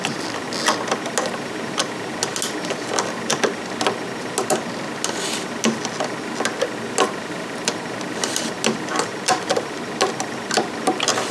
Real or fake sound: real